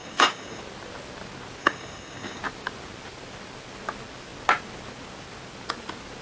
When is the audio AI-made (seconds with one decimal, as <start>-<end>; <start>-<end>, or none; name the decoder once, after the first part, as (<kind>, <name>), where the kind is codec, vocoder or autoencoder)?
0.0-0.6 (codec, DAC); 1.6-2.4